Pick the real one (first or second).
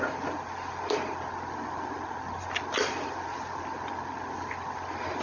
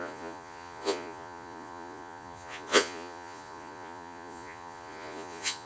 first